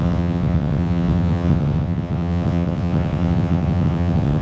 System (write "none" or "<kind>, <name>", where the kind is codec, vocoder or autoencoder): vocoder, WaveNeXt